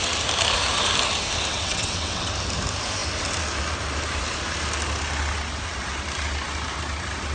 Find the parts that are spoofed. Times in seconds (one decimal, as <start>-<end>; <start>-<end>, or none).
1.5-2.3